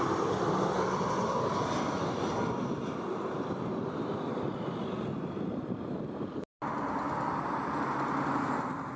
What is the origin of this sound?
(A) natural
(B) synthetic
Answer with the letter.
A